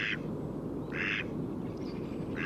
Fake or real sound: real